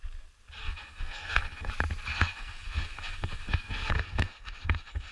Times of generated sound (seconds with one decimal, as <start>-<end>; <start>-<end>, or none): 0.6-1.7; 2.1-5.1